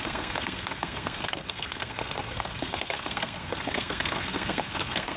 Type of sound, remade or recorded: remade